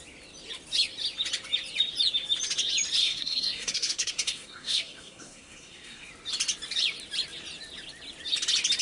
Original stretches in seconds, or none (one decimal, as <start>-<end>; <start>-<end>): 0.0-3.0; 6.1-8.8